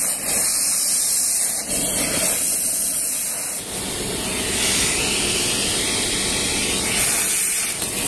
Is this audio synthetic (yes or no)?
no